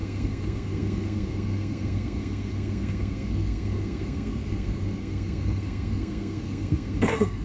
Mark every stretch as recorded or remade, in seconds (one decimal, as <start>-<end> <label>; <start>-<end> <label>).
0.0-7.4 remade